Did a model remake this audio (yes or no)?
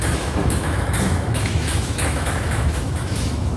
yes